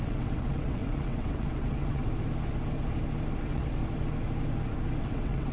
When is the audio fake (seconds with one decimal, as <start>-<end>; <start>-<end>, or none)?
0.0-2.0; 3.4-3.8; 5.0-5.5